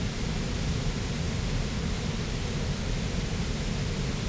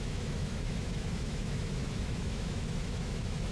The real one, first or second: first